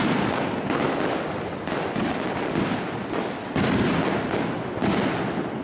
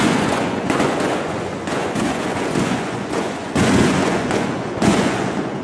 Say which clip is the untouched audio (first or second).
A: first